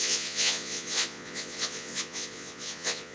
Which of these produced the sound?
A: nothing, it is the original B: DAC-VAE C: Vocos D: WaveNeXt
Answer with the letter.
C